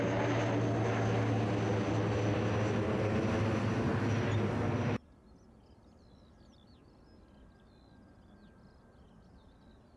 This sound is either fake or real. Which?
real